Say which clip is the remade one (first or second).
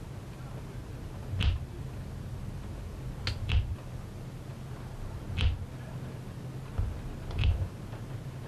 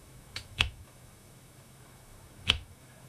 second